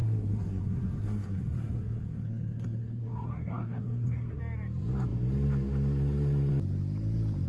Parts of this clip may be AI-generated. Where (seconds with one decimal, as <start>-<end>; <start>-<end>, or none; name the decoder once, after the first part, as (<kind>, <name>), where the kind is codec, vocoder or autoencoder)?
0.0-4.4 (codec, SNAC)